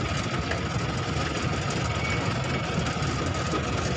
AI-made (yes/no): no